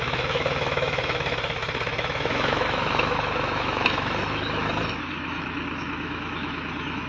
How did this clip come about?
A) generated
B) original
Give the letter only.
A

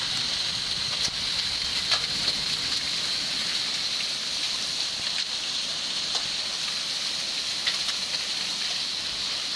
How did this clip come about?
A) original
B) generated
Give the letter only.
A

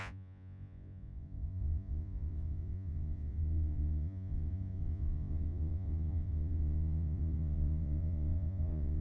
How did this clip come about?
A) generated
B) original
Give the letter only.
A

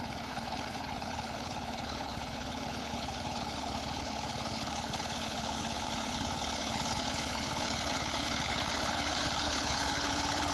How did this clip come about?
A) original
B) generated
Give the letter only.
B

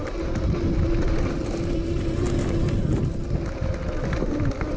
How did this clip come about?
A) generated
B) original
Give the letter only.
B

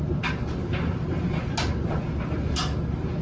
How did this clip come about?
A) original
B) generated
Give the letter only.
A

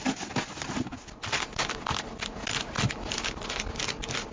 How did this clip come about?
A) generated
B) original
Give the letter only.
B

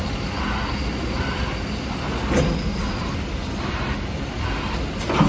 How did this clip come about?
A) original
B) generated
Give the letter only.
A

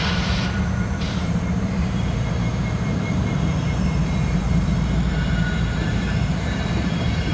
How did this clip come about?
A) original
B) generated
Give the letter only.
B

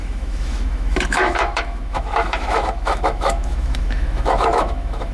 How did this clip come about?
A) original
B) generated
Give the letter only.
B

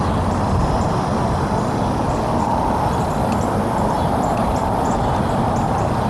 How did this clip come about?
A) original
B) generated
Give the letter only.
A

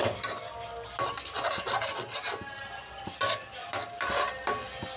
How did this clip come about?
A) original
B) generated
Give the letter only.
A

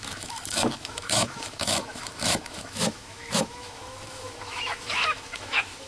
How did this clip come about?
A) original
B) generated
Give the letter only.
B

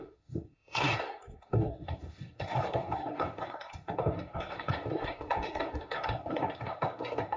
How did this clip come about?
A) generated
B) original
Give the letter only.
A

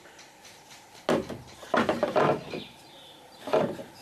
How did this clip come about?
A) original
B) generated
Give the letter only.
A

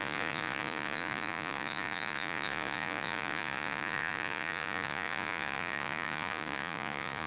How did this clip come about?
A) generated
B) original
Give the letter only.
A